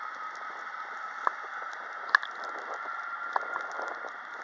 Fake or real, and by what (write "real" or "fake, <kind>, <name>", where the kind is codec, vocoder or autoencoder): real